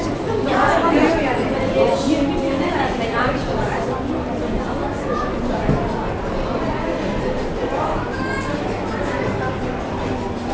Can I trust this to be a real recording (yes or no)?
yes